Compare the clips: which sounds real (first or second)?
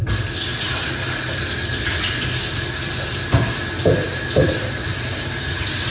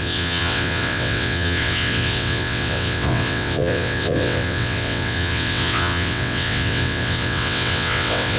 first